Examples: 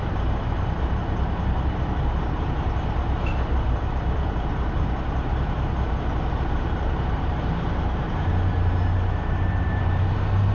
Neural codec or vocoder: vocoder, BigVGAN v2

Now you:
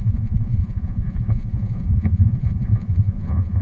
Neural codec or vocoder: vocoder, Vocos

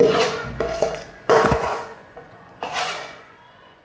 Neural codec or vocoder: vocoder, Vocos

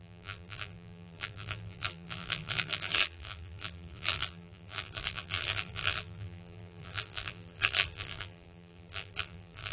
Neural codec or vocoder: vocoder, BigVGAN v2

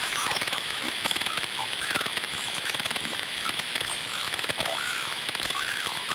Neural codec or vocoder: autoencoder, DAC-VAE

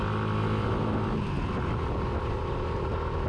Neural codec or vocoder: none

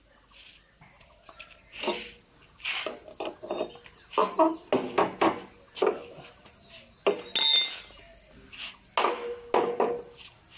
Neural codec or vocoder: none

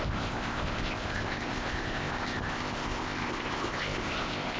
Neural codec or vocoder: codec, ZipCodec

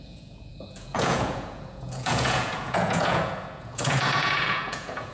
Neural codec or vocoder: vocoder, Vocos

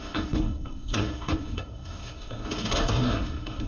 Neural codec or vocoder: codec, SNAC